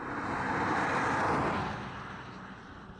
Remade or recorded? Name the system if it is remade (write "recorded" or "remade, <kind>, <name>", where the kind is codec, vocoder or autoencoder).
recorded